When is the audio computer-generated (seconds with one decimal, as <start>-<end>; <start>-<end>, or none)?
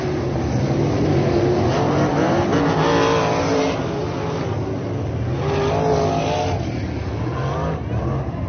none